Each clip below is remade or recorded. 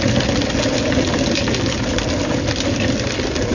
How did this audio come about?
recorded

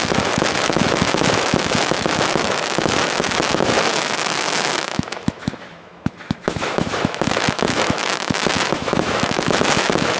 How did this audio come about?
remade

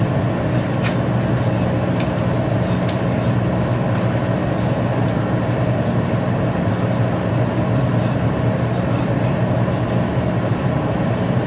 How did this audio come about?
recorded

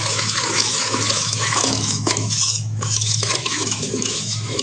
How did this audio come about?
remade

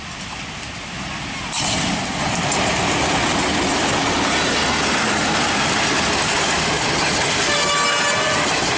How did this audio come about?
recorded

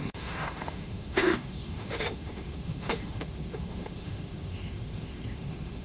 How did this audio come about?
remade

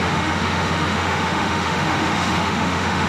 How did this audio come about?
remade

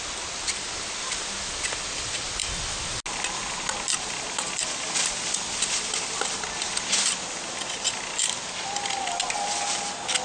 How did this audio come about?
recorded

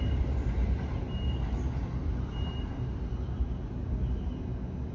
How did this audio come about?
recorded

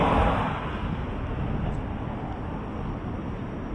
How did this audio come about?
recorded